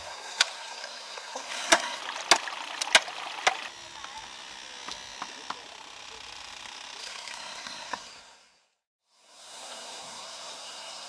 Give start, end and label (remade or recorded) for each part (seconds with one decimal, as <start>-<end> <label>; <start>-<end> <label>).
0.0-2.0 remade; 2.0-7.0 recorded; 7.0-11.1 remade

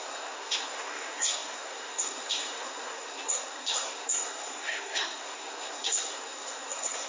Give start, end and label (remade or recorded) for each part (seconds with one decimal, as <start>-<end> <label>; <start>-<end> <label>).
0.0-7.1 remade